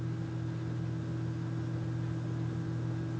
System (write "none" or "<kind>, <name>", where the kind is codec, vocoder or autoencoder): none